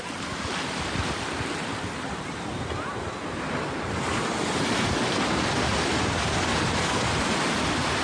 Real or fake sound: real